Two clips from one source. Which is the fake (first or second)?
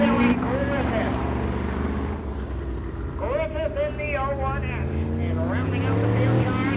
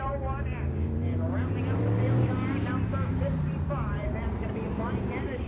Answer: second